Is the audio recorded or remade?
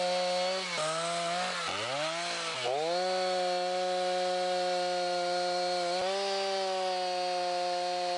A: recorded